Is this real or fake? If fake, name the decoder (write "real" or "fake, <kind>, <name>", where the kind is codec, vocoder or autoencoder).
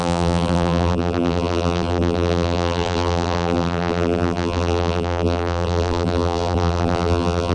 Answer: fake, vocoder, BigVGAN v2